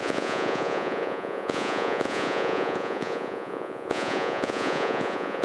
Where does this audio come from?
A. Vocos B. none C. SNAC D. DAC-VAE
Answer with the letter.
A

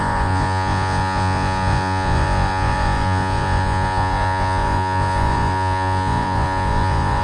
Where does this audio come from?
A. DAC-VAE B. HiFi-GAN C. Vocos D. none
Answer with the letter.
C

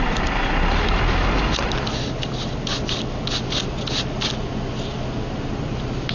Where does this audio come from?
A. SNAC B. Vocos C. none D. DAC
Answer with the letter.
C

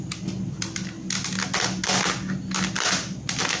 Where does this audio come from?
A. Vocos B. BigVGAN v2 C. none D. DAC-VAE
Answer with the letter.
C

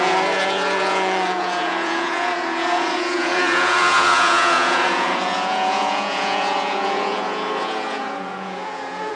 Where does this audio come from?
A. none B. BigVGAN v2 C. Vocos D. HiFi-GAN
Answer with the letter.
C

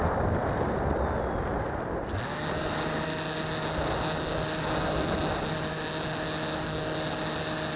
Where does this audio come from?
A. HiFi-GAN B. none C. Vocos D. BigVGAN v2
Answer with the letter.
B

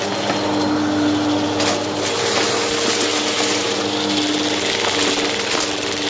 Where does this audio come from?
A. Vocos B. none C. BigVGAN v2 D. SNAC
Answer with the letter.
B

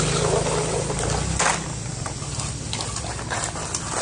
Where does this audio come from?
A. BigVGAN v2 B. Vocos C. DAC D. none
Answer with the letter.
D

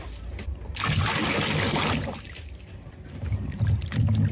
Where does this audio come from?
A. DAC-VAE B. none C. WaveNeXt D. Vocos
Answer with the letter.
B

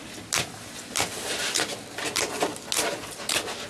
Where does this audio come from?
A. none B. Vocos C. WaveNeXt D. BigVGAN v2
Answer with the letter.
A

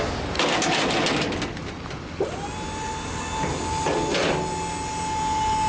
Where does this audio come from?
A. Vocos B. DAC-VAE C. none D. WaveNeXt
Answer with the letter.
C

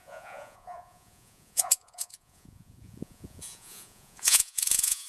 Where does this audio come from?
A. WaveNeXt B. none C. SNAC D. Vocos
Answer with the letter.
D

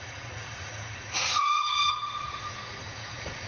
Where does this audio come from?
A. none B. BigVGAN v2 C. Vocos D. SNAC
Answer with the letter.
C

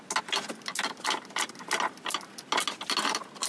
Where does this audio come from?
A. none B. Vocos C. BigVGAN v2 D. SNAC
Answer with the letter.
A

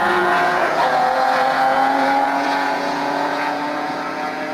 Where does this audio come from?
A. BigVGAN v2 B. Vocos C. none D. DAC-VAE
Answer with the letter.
B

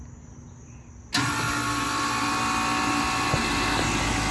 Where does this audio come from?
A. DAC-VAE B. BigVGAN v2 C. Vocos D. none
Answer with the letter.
D